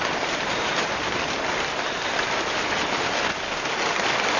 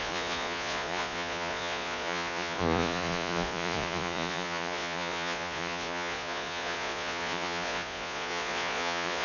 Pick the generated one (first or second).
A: second